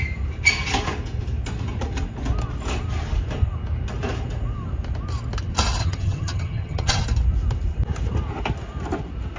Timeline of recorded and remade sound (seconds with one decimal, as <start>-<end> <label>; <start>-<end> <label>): 0.0-5.8 recorded; 5.8-7.0 remade; 7.0-9.4 recorded